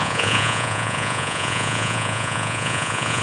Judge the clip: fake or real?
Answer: fake